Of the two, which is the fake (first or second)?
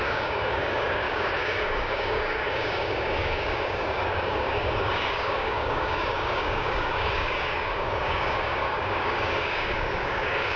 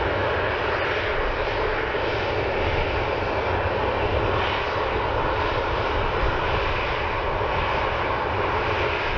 first